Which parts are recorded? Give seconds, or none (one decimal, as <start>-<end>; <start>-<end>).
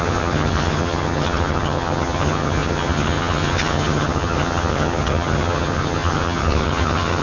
none